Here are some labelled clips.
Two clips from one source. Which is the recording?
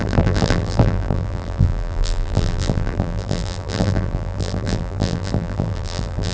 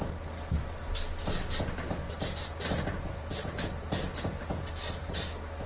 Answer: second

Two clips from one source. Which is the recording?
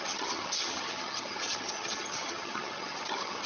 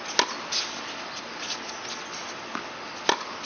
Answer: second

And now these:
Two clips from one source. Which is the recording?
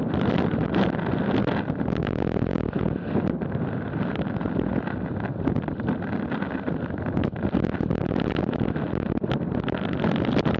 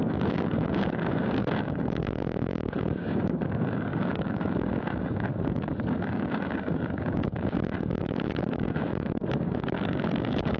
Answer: first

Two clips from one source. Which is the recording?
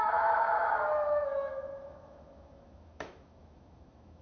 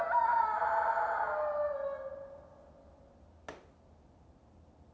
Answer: second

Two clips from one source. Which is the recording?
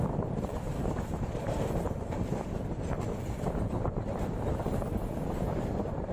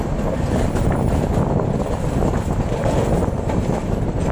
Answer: second